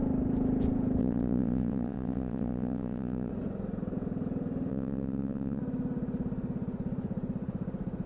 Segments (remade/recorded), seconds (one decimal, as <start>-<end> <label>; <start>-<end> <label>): 0.0-1.0 recorded; 1.0-3.3 remade; 3.3-4.7 recorded; 4.7-5.6 remade; 5.6-8.1 recorded